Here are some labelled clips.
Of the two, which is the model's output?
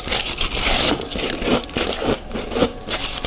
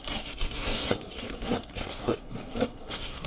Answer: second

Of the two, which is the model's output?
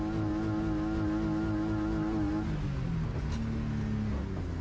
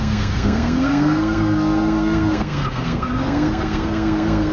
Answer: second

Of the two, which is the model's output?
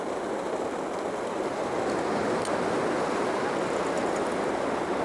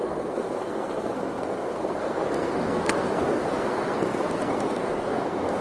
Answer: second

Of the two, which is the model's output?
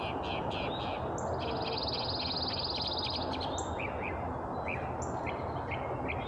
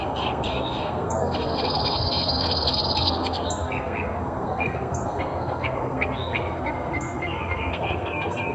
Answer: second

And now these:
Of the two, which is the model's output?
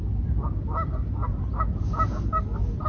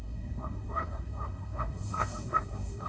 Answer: second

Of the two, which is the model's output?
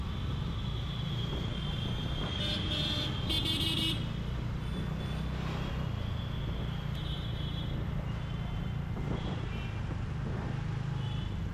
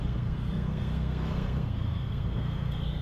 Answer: second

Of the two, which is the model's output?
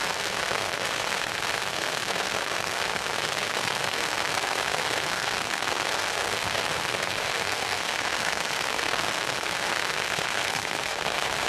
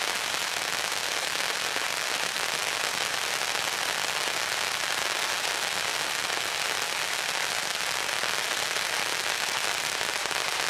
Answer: first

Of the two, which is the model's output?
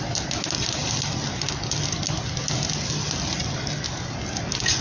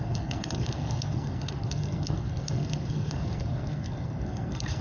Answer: second